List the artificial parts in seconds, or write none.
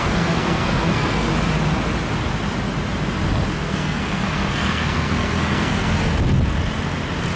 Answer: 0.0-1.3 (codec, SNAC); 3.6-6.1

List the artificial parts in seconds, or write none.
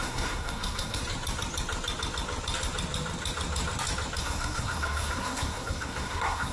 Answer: 0.0-1.0 (codec, SNAC); 4.2-6.5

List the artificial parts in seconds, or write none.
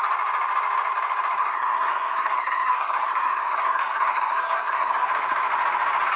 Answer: 1.4-5.1 (codec, SNAC)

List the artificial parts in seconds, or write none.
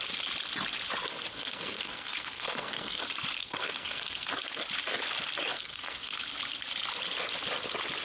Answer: 1.3-3.0 (codec, SNAC); 3.4-4.3; 5.5-6.2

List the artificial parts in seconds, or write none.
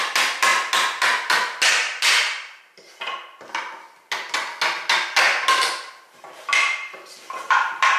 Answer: none